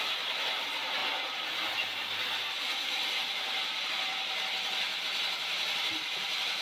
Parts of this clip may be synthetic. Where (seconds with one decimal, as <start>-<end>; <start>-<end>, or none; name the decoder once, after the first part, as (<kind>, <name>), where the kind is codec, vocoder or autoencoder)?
none

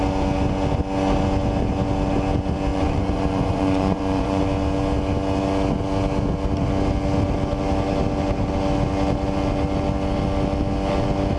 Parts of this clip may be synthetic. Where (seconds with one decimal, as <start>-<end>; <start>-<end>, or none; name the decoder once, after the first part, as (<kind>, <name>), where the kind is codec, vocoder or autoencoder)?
2.7-4.4 (vocoder, Vocos)

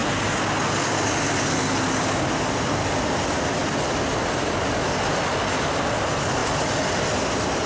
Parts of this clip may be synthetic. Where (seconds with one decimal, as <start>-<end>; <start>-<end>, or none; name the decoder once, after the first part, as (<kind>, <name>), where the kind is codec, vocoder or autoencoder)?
none

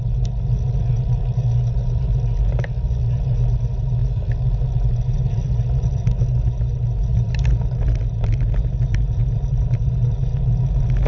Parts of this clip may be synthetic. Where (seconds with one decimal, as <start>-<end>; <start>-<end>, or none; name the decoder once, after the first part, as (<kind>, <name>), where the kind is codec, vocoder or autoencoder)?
none

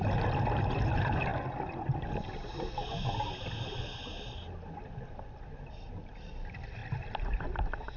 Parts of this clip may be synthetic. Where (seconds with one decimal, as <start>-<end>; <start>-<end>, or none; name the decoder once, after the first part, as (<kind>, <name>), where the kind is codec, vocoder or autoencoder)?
none

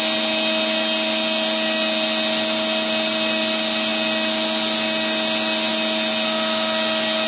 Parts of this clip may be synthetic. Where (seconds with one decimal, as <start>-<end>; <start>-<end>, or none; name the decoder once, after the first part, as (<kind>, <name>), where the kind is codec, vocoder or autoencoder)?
none